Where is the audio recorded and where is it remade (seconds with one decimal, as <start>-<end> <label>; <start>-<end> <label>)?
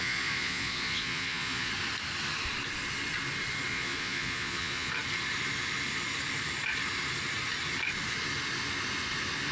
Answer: 0.0-1.7 remade; 1.7-3.7 recorded; 3.7-4.9 remade; 4.9-9.5 recorded